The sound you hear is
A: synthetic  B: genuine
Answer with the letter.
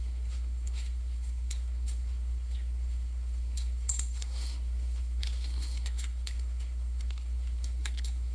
A